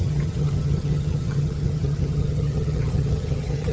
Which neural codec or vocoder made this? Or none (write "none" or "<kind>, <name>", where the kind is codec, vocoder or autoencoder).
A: vocoder, HiFi-GAN